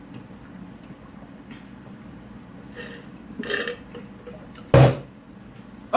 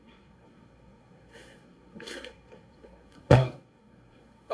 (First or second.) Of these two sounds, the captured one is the first